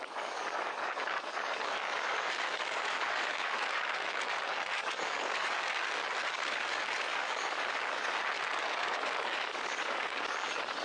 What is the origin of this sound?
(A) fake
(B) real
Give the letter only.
A